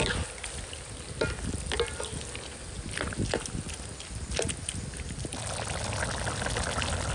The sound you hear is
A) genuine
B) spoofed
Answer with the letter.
A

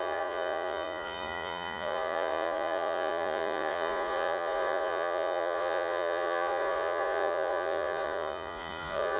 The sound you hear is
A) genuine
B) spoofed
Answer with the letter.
B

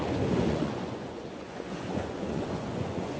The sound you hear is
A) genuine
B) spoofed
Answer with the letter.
B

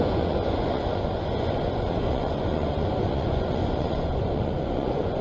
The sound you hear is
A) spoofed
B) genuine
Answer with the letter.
A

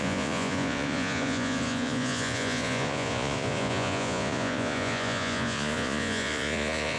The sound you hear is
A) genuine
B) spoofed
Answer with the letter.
B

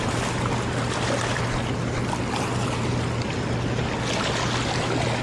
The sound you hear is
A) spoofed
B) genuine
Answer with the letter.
B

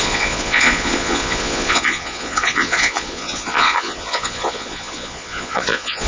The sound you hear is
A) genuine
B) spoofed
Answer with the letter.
B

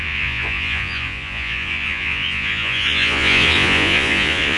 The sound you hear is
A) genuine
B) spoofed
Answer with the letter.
B